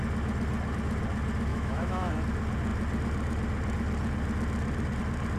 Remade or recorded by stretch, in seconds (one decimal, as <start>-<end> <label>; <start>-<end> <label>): 0.0-1.5 recorded; 1.5-2.1 remade; 2.1-5.4 recorded